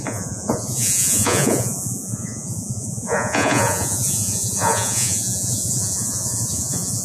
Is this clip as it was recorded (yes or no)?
no